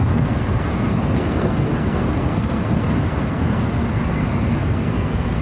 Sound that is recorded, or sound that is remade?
remade